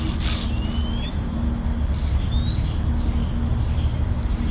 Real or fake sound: real